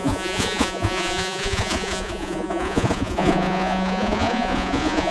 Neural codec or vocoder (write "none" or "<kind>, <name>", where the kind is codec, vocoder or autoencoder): vocoder, Vocos